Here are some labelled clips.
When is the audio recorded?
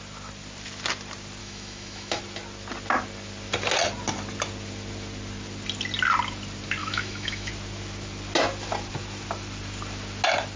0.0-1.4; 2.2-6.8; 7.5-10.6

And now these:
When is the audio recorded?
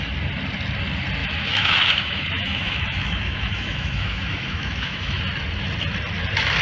0.0-1.2; 5.2-6.6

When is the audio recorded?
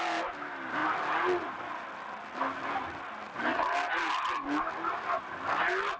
0.0-6.0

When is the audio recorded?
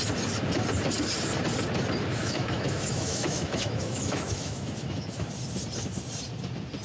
0.0-2.2; 5.3-6.8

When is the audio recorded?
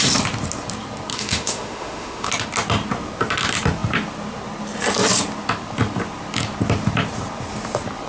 0.0-1.1; 2.3-8.1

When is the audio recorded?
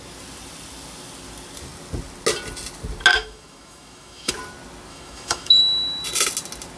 0.0-3.1; 4.3-4.9; 5.6-6.8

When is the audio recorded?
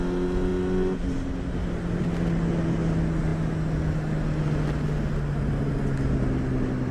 0.0-6.9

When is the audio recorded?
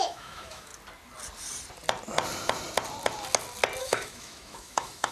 0.7-3.8